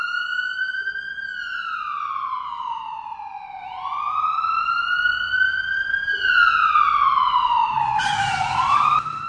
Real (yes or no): yes